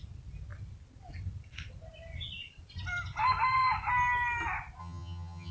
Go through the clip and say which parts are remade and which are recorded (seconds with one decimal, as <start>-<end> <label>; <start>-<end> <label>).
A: 0.0-4.8 recorded; 4.8-5.5 remade